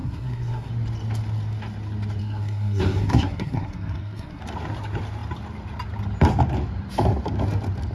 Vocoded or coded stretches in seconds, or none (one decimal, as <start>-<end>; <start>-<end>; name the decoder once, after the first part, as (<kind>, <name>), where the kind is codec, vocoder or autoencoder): 0.0-0.7 (codec, SNAC); 2.2-4.4